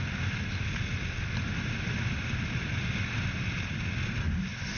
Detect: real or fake real